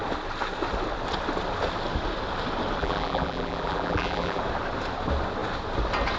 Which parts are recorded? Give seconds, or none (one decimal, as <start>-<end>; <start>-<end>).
0.0-2.8; 4.4-6.2